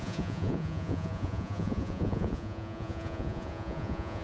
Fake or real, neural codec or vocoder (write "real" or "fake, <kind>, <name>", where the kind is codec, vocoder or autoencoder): fake, vocoder, Vocos